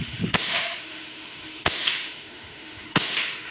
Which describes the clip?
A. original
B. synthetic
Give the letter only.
B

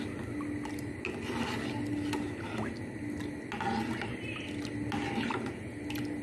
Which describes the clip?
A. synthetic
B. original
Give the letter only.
B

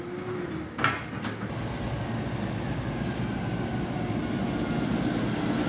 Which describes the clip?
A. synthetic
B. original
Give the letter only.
B